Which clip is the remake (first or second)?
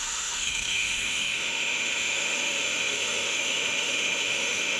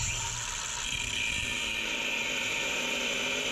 first